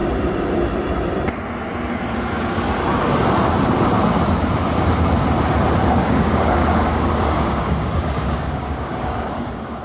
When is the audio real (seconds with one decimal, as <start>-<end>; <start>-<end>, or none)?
0.0-6.0